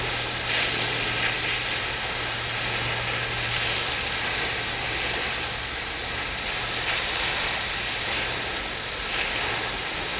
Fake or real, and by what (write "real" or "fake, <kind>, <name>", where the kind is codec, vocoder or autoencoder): real